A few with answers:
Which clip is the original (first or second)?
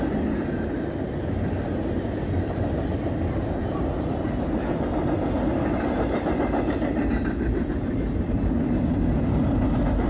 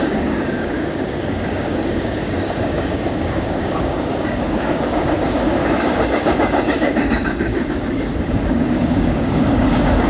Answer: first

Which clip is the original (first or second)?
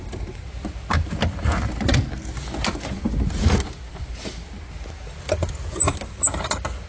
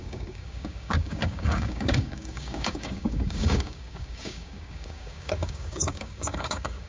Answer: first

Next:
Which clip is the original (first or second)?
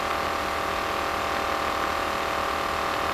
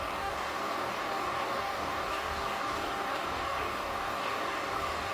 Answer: first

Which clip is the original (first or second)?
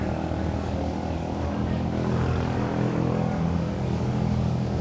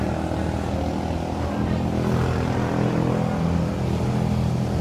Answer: second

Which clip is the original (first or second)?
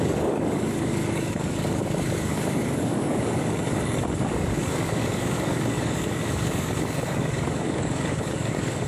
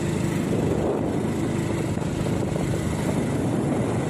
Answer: second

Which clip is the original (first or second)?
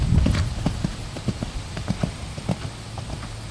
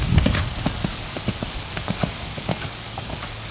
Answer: first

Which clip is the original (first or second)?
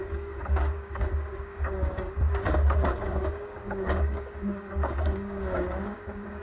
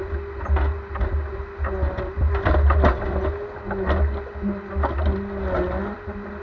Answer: second